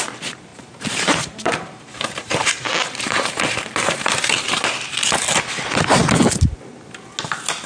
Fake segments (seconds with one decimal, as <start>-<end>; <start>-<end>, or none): 0.5-5.1